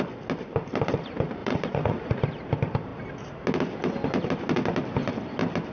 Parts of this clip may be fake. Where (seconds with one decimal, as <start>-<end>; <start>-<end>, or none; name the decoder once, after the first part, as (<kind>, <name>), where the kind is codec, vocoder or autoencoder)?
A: 1.4-2.2 (vocoder, Vocos)